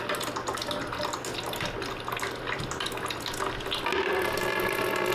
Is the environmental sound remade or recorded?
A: recorded